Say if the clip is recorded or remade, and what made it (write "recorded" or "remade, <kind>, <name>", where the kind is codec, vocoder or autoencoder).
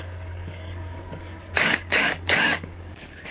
remade, codec, DAC